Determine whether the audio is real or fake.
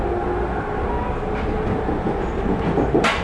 real